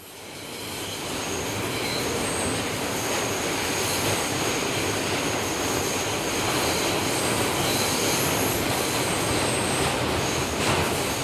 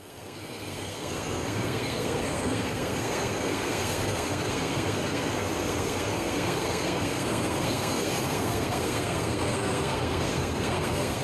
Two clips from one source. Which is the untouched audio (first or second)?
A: first